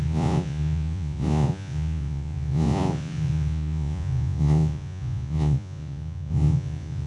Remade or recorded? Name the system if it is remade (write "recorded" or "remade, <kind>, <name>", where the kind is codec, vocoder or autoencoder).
remade, vocoder, Vocos